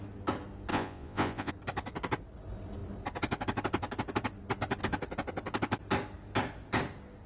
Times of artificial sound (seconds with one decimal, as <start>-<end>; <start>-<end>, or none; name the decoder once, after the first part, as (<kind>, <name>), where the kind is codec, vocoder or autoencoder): 0.7-1.5 (vocoder, Vocos)